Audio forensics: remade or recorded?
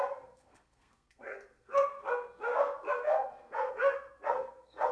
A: remade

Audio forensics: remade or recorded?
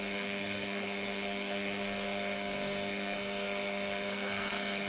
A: remade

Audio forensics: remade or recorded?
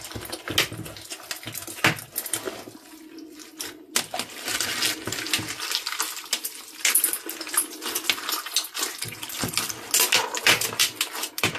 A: recorded